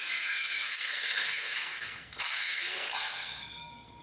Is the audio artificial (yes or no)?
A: yes